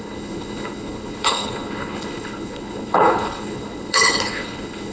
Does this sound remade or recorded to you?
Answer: remade